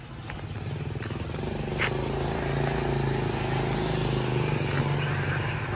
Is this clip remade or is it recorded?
recorded